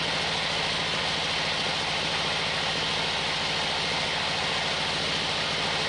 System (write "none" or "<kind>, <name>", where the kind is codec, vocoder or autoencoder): none